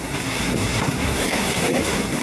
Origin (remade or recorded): remade